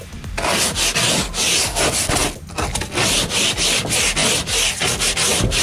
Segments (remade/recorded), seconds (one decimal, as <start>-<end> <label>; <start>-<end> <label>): 0.0-5.6 recorded